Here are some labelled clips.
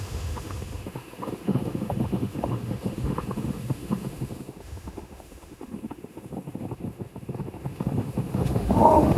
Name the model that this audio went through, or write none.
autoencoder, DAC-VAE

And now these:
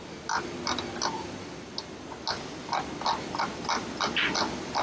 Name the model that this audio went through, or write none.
none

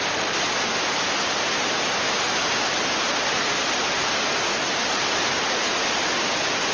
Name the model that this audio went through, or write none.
none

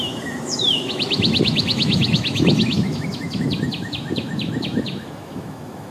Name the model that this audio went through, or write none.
autoencoder, DAC-VAE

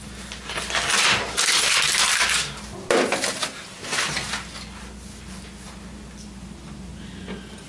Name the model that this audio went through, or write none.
none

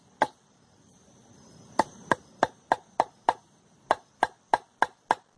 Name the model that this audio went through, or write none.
none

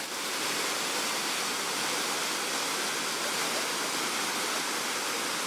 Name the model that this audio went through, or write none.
none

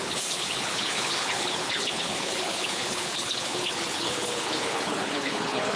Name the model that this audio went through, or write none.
codec, HILCodec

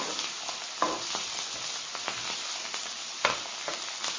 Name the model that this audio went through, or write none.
none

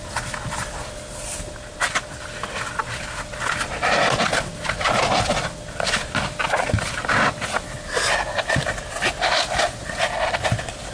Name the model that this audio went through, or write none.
none